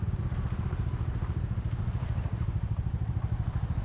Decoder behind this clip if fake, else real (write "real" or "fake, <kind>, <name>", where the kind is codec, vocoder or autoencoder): fake, vocoder, BigVGAN v2